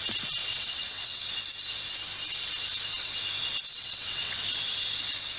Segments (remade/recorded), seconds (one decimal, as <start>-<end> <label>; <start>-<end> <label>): 0.0-0.4 recorded; 0.4-1.3 remade; 1.3-3.7 recorded; 3.7-4.4 remade; 4.4-5.4 recorded